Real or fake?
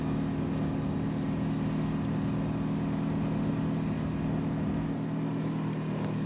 real